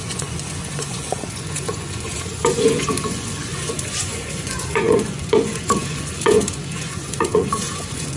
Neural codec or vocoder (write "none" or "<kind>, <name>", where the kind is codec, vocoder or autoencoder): vocoder, Vocos